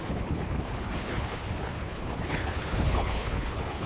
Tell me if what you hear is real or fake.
fake